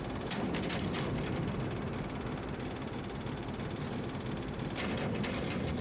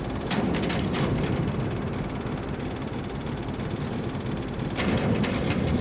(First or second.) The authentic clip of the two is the first